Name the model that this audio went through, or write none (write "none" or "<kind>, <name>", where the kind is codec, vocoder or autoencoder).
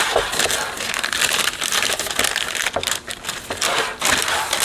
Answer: none